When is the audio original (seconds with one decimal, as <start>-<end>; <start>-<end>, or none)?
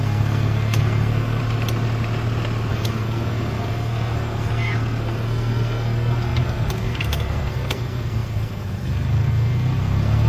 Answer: 1.4-2.7